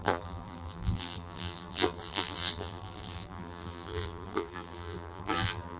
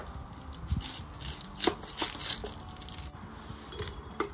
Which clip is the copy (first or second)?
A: first